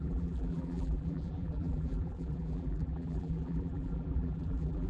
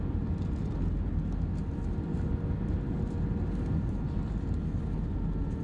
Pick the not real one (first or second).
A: first